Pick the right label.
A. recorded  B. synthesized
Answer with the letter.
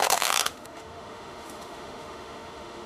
B